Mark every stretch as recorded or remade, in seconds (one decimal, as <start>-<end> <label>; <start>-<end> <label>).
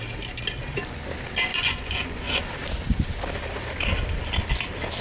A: 0.0-1.5 recorded; 1.5-2.4 remade; 2.4-5.0 recorded